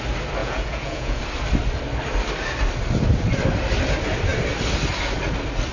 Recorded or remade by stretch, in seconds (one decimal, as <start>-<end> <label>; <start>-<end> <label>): 0.0-0.4 recorded; 0.4-1.2 remade; 1.2-5.7 recorded